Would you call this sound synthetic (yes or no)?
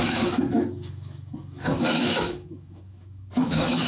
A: yes